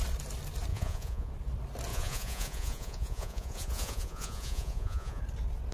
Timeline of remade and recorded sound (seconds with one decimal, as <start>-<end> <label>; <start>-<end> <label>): 0.0-0.7 recorded; 0.7-1.3 remade; 1.3-1.9 recorded; 1.9-5.2 remade; 5.2-5.7 recorded